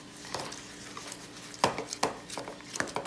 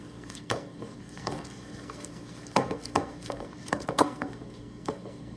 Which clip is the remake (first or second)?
second